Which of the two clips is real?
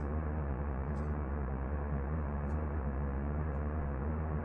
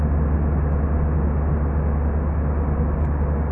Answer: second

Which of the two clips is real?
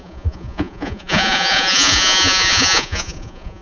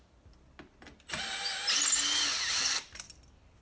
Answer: second